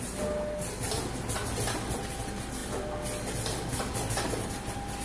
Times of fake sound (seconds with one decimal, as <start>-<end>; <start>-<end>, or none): none